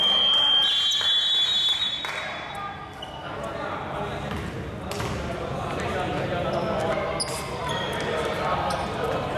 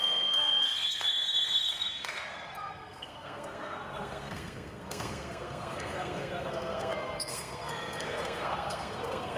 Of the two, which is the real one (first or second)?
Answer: first